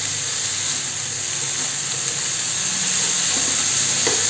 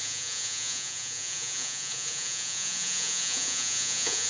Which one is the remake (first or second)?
second